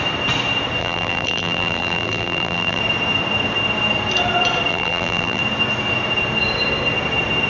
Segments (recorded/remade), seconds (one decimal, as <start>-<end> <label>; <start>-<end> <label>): 0.0-0.8 recorded; 0.8-2.8 remade; 2.8-4.7 recorded; 4.7-5.4 remade; 5.4-7.5 recorded